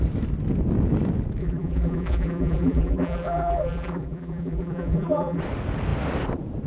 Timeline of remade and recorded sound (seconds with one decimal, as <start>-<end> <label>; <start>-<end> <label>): 0.0-1.4 recorded; 1.4-5.4 remade; 5.4-6.7 recorded